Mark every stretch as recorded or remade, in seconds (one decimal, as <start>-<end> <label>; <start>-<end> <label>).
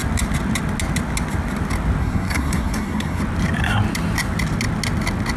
0.0-2.0 recorded; 2.0-3.2 remade; 3.2-5.4 recorded